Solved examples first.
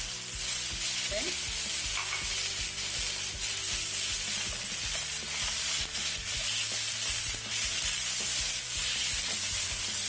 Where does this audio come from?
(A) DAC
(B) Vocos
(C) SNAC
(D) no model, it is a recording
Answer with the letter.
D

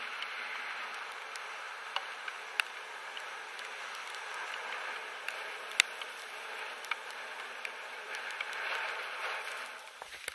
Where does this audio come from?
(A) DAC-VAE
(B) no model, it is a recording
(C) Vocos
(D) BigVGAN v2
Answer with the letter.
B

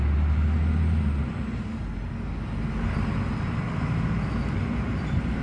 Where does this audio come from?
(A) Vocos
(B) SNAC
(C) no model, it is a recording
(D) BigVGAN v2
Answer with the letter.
C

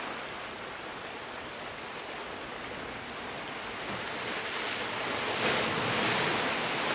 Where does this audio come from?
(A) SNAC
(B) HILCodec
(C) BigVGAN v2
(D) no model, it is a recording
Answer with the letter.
D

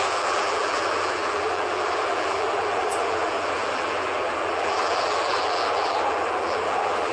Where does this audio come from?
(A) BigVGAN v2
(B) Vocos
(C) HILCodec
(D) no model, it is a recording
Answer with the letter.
A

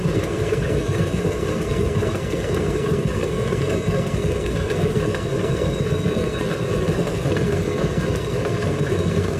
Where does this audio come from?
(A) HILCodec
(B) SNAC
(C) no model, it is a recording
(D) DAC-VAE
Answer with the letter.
B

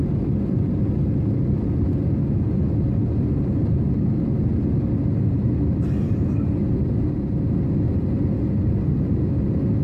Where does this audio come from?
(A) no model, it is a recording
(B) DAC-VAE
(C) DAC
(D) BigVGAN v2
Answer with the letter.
A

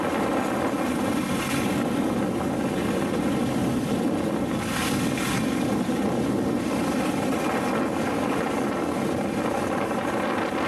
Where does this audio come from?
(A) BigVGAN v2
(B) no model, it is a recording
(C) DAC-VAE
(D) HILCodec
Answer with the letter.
B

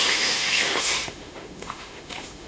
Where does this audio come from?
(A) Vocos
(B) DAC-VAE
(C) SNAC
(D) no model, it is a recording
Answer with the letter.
B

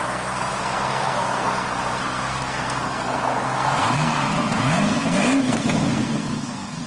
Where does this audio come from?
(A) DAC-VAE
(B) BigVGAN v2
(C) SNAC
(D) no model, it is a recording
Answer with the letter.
C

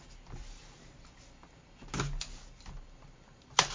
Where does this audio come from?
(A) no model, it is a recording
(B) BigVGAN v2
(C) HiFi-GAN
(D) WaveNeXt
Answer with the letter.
A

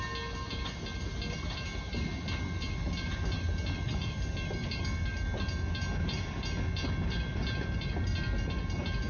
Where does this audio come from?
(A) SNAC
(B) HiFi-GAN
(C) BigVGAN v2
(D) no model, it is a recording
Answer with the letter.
D